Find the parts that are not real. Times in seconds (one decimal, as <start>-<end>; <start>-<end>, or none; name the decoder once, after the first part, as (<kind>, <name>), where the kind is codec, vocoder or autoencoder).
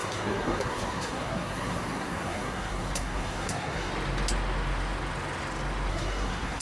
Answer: 0.0-3.9 (codec, SNAC); 5.9-6.6